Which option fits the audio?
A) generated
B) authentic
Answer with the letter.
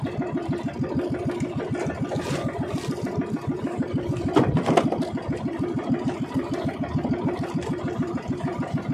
A